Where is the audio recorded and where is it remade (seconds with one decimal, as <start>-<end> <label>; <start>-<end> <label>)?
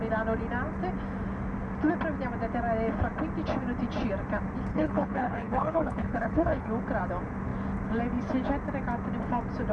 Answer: 0.0-4.7 recorded; 4.7-6.7 remade; 6.7-9.7 recorded